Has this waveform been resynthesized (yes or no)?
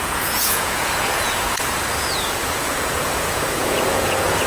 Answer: yes